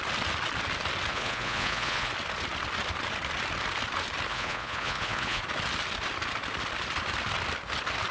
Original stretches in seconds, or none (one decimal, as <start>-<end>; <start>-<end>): 0.0-1.1; 2.1-4.3; 5.4-8.1